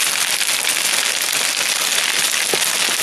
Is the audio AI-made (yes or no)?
no